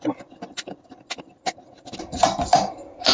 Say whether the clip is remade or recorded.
recorded